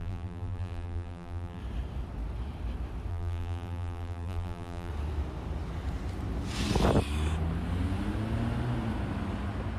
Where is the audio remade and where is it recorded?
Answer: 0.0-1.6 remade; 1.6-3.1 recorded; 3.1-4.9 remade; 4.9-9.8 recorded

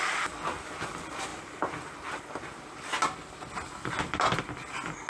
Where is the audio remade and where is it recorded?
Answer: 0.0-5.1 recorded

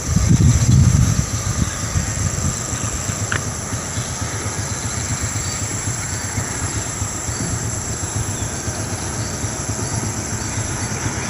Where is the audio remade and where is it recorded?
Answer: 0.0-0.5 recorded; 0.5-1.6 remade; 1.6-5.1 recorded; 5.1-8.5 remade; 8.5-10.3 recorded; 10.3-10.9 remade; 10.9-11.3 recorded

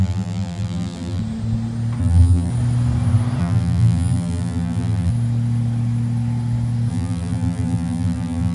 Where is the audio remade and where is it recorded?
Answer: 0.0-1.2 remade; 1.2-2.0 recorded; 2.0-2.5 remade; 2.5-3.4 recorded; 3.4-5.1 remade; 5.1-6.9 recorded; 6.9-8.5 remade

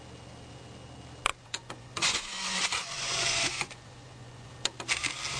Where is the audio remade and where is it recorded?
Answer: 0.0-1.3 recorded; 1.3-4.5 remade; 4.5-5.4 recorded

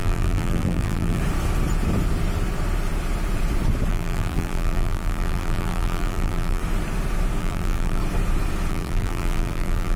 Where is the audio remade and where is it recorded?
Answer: 0.0-1.2 remade; 1.2-3.9 recorded; 3.9-6.6 remade; 6.6-7.4 recorded; 7.4-8.0 remade; 8.0-8.7 recorded; 8.7-10.0 remade